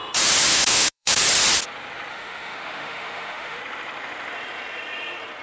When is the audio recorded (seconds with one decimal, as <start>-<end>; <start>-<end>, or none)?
0.0-0.5; 1.2-2.1; 3.6-5.4